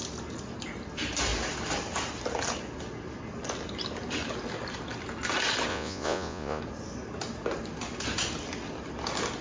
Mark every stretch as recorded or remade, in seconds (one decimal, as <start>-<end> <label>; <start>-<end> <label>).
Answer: 0.0-5.7 recorded; 5.7-6.6 remade; 6.6-9.4 recorded